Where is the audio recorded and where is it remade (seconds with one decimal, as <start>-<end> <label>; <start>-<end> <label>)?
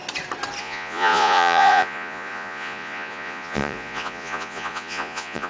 0.0-0.6 recorded; 0.6-5.5 remade